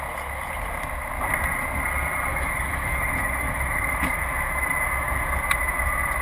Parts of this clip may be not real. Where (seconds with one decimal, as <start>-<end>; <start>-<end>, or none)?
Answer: 2.3-4.2